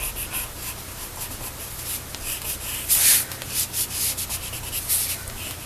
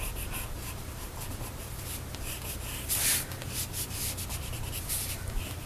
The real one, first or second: first